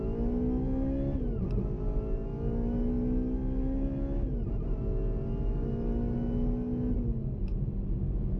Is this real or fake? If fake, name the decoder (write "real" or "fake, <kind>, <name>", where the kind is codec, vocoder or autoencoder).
real